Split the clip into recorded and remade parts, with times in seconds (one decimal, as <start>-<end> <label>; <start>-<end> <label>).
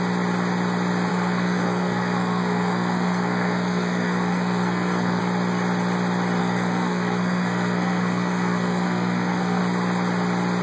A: 0.0-1.1 recorded; 1.1-5.2 remade; 5.2-6.4 recorded; 6.4-9.6 remade; 9.6-10.6 recorded